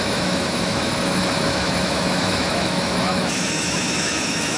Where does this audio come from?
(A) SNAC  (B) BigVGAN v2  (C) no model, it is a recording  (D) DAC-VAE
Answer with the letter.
D